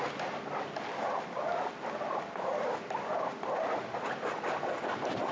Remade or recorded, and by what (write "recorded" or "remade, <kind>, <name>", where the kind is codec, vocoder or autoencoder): recorded